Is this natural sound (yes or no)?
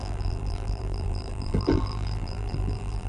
no